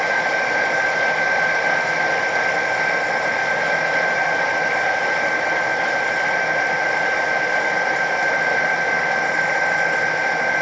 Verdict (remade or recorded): recorded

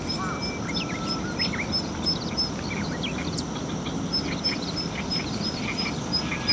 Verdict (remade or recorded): recorded